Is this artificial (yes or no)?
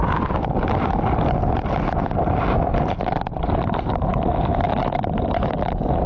no